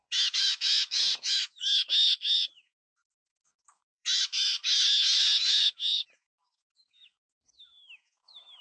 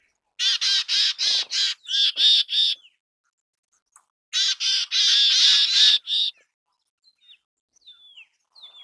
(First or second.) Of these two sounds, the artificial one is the first